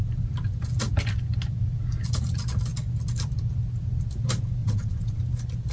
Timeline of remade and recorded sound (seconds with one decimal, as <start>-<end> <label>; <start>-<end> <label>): 0.0-4.6 recorded; 4.6-5.2 remade; 5.2-5.7 recorded